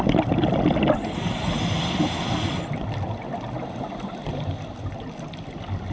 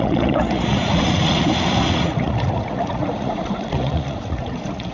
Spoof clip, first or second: second